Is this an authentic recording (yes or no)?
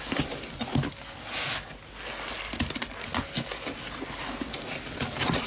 yes